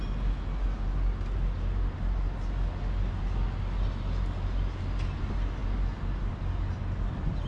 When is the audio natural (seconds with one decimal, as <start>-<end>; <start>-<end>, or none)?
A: 0.0-7.5